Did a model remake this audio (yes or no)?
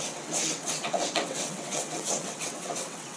yes